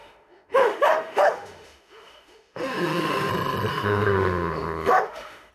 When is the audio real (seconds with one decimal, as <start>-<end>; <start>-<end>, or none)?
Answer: 3.3-3.7

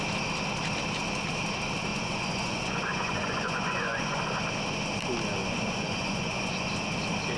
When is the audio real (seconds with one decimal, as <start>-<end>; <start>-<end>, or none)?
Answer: 0.0-1.9; 4.2-5.4; 6.7-7.4